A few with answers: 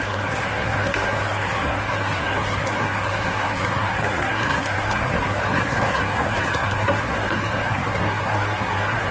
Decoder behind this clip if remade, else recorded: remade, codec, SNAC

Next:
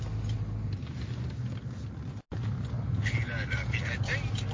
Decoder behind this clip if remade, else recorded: recorded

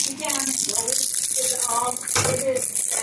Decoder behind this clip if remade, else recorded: recorded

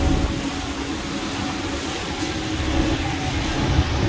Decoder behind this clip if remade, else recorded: recorded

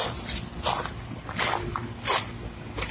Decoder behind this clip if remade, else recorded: recorded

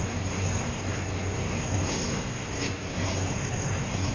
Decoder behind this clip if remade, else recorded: remade, codec, SNAC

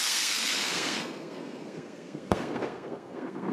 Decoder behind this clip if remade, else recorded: remade, codec, SNAC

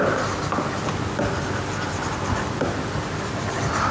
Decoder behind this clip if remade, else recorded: recorded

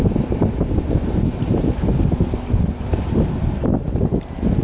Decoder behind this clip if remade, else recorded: recorded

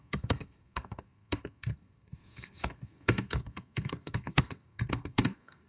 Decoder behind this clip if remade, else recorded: remade, codec, SNAC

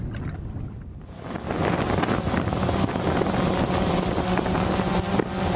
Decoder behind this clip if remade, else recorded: recorded